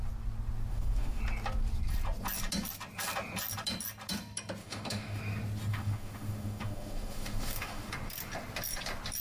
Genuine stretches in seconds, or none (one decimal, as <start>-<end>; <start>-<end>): 0.0-0.7; 1.2-4.6; 5.2-5.7; 7.9-9.2